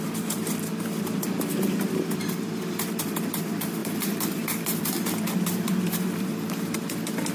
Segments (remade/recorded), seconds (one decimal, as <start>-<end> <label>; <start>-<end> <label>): 0.0-7.3 remade